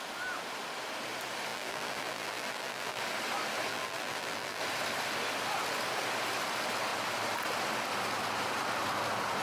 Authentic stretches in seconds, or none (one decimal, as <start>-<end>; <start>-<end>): 0.0-1.5; 3.0-3.7; 4.6-9.4